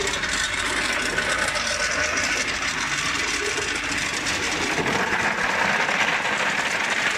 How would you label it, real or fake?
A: real